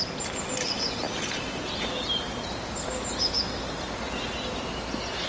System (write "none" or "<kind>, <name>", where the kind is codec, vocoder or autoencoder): none